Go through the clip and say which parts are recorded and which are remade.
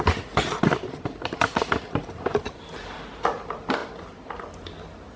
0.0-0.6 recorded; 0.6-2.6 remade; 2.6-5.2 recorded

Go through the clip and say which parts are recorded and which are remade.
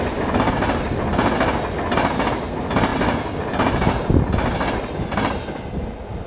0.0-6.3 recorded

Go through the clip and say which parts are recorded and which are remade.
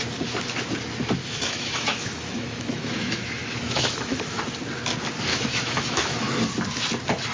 0.0-1.2 recorded; 1.2-4.4 remade; 4.4-5.3 recorded; 5.3-6.4 remade; 6.4-7.3 recorded